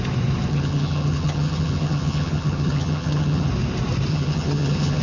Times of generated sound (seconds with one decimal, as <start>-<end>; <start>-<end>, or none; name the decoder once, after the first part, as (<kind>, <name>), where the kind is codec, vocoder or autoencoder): 0.5-3.5 (vocoder, HiFi-GAN); 4.1-5.0